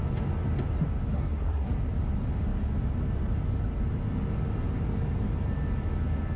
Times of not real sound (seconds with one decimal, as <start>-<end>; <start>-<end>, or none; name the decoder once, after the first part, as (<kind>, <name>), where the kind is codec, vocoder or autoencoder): 1.1-1.8 (codec, SNAC)